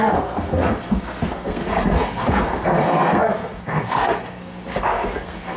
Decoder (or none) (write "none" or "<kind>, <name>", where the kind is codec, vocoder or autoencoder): codec, SNAC